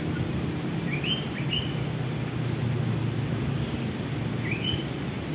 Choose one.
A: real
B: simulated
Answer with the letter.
A